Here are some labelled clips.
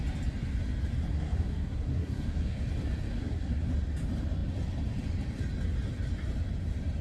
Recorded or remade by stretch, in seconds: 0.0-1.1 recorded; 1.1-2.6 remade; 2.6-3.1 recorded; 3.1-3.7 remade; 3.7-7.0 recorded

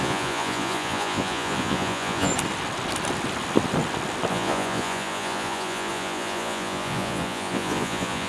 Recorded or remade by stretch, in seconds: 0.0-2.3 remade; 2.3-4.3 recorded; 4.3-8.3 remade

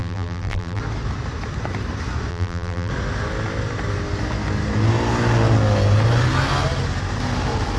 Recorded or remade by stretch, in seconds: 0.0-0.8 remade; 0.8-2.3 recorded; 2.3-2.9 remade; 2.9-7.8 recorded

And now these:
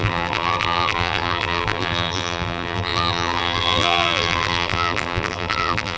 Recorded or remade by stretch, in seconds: 0.0-6.0 remade